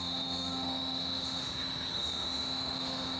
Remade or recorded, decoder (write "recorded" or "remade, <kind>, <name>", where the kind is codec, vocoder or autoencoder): remade, autoencoder, DAC-VAE